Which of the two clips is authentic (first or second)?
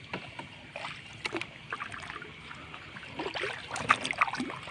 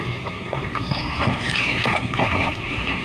first